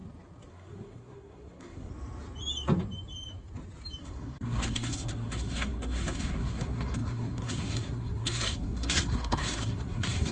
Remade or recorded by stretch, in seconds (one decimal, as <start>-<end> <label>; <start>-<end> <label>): 0.0-0.5 recorded; 0.5-1.9 remade; 1.9-4.0 recorded; 4.0-10.3 remade